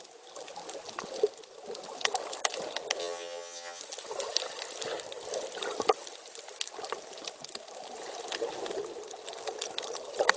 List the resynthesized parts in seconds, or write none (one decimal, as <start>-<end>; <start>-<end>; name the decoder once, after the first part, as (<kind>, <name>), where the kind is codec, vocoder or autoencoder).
3.0-3.8 (vocoder, HiFi-GAN)